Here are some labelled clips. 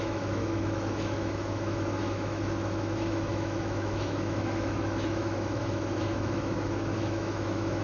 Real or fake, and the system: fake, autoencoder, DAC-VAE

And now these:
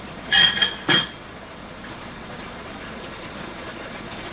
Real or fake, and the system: fake, vocoder, Vocos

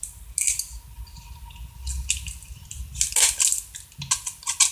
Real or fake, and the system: real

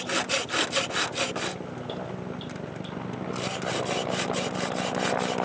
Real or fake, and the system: real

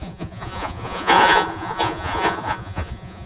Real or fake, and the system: fake, vocoder, Vocos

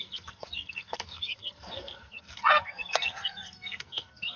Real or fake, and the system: fake, codec, SNAC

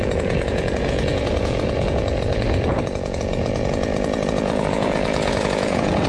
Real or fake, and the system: fake, vocoder, Vocos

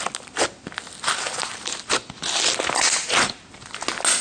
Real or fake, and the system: real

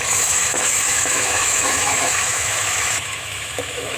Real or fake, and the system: fake, autoencoder, DAC-VAE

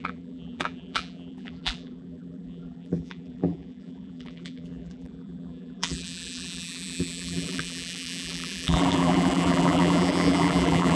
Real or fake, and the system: fake, vocoder, BigVGAN v2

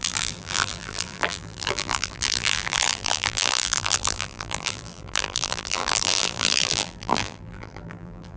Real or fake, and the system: fake, vocoder, BigVGAN v2